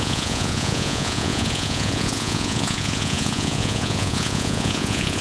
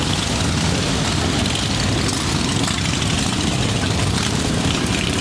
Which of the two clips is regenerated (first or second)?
first